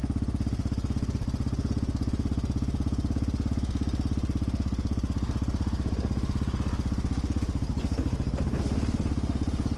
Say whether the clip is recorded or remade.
recorded